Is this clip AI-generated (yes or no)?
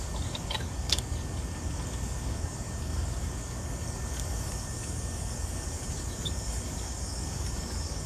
yes